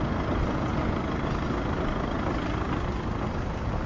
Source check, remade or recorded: recorded